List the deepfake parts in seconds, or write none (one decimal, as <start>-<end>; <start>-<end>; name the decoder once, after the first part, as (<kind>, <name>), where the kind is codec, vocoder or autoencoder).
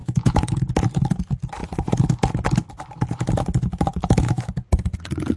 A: 0.0-0.6 (autoencoder, DAC-VAE); 3.9-4.5